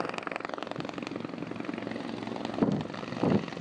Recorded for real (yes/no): yes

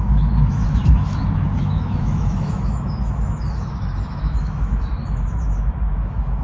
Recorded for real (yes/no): no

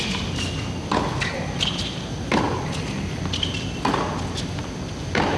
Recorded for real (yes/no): yes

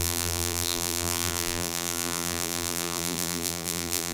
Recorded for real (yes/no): no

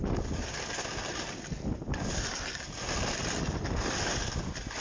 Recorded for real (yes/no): yes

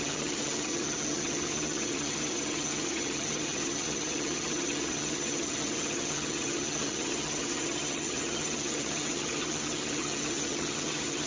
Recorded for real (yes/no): no